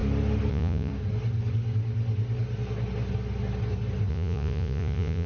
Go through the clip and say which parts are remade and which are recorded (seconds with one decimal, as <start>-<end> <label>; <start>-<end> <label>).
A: 0.0-0.5 recorded; 0.5-0.9 remade; 0.9-4.1 recorded; 4.1-5.3 remade